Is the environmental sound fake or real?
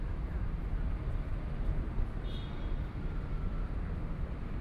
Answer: real